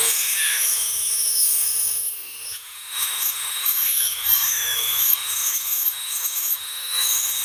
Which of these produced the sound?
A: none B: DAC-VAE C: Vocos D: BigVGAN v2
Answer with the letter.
B